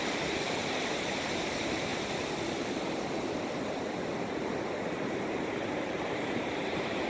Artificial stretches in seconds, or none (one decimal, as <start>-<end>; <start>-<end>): 0.0-1.9; 5.5-7.1